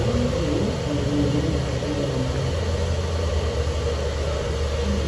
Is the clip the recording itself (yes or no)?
yes